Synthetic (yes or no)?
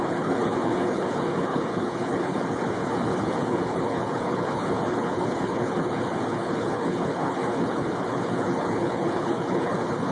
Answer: yes